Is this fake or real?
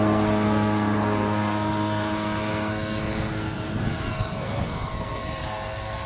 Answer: fake